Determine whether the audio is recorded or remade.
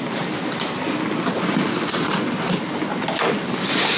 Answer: recorded